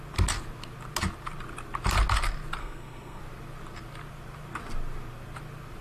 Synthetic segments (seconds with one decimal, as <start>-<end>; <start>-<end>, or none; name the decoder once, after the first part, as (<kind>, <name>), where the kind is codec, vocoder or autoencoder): 2.6-3.2 (codec, SNAC)